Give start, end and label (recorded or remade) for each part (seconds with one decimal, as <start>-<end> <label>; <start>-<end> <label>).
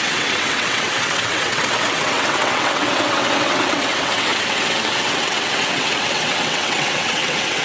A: 0.0-7.6 remade